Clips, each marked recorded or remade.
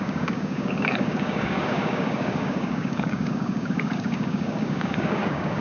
remade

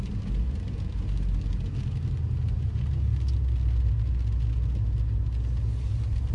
recorded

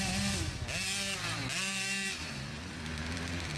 recorded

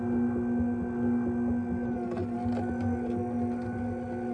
recorded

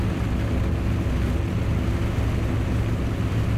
recorded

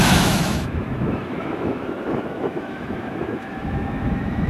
remade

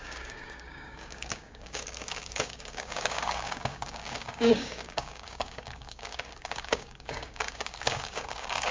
remade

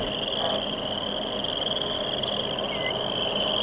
recorded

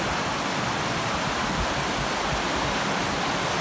recorded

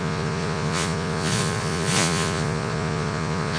remade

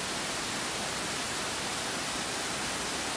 recorded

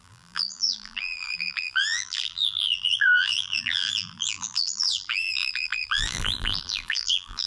remade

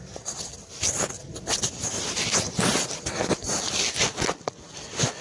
recorded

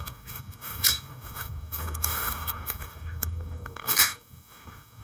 remade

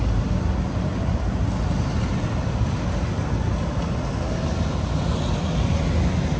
recorded